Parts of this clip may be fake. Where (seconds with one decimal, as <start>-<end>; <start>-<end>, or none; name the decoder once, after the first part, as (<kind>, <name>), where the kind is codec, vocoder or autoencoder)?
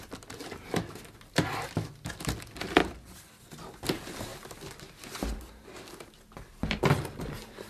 none